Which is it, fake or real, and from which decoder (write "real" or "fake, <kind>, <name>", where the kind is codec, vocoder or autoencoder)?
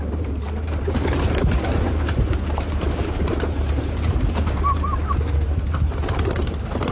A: fake, vocoder, BigVGAN v2